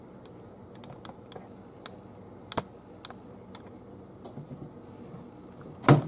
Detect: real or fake real